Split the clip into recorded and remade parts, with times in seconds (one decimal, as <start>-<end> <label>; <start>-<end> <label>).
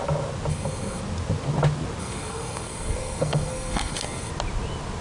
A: 0.0-0.5 recorded; 0.5-1.0 remade; 1.0-2.0 recorded; 2.0-4.3 remade; 4.3-5.0 recorded